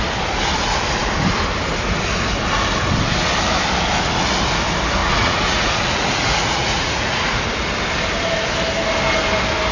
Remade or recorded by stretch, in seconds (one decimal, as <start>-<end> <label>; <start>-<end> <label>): 0.0-5.0 recorded; 5.0-7.4 remade; 7.4-9.7 recorded